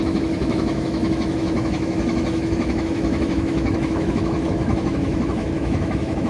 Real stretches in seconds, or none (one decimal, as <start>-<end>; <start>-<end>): none